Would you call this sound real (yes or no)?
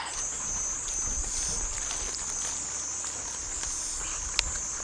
yes